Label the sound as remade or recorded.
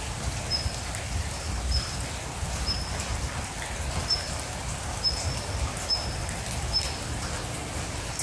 recorded